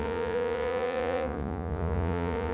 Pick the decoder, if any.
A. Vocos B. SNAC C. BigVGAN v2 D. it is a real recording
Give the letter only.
A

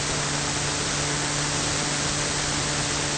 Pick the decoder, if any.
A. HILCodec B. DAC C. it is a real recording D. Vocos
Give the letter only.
C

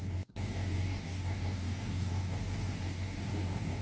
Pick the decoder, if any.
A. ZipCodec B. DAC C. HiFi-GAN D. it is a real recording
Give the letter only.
B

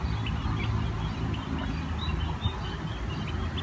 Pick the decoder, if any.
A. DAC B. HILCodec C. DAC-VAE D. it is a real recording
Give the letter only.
D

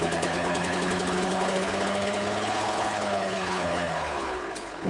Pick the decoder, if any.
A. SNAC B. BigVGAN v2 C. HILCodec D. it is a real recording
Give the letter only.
C